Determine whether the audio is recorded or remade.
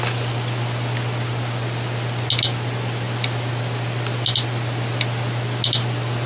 recorded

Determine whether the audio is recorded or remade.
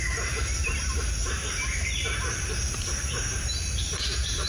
remade